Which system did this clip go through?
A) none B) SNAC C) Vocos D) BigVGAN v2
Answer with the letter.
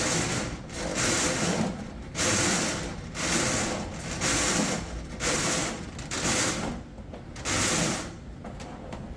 D